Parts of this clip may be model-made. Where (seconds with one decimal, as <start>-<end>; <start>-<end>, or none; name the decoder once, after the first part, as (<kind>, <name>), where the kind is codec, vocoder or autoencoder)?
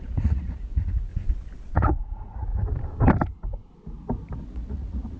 0.0-1.1 (vocoder, Vocos); 1.7-2.5; 4.4-5.2